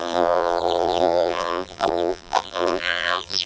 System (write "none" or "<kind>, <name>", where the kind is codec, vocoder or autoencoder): vocoder, BigVGAN v2